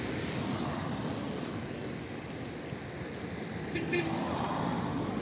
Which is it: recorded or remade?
remade